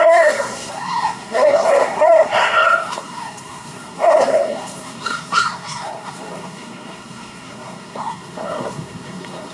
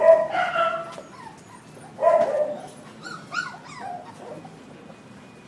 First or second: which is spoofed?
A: first